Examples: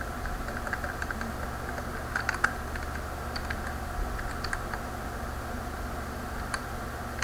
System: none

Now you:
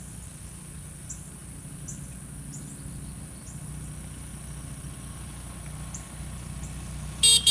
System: none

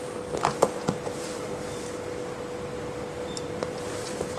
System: vocoder, BigVGAN v2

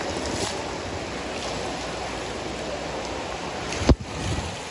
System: none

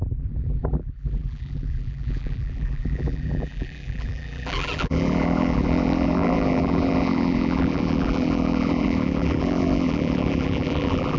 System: vocoder, BigVGAN v2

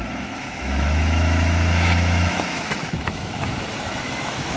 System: autoencoder, DAC-VAE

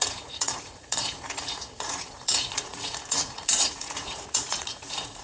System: vocoder, Vocos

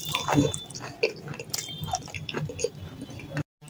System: none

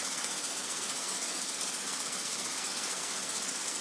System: codec, SNAC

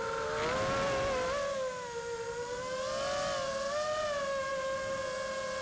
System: none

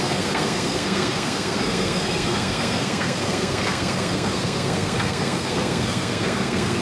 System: codec, SNAC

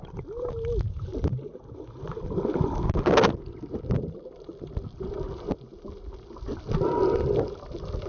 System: none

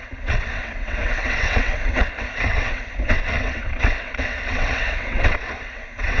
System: vocoder, WaveNeXt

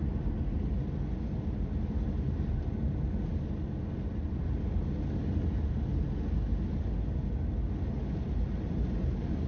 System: none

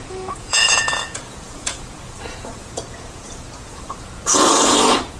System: vocoder, Vocos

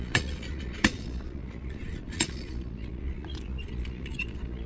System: vocoder, Vocos